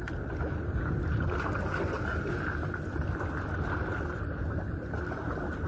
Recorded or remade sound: recorded